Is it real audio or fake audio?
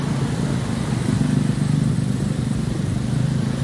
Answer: real